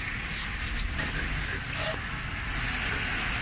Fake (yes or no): no